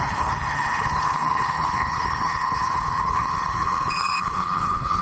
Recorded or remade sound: remade